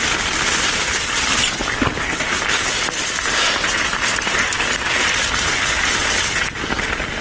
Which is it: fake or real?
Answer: real